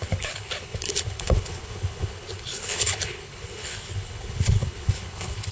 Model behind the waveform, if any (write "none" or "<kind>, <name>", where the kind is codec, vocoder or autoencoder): codec, HILCodec